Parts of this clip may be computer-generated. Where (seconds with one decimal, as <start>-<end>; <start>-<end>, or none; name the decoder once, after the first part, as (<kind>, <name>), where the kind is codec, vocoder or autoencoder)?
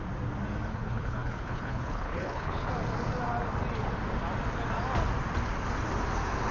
0.7-2.7 (codec, HILCodec)